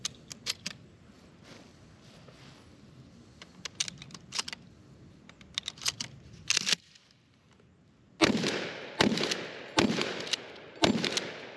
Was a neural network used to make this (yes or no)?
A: no